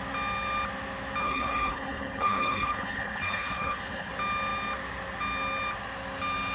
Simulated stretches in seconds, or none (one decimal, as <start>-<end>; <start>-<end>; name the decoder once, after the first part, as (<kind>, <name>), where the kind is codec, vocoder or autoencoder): 1.2-4.1 (codec, HILCodec)